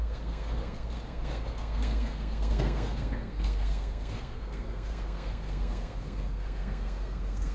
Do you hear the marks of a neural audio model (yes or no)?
yes